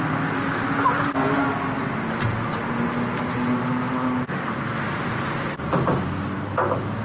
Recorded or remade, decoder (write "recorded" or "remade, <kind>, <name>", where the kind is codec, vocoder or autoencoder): recorded